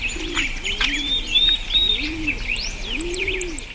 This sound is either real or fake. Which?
fake